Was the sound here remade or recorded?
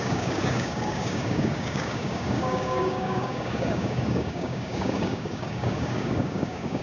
remade